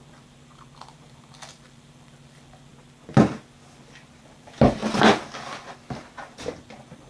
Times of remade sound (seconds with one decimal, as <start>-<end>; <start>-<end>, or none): 0.0-2.7; 4.2-4.8; 6.6-7.1